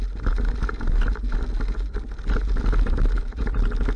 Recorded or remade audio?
recorded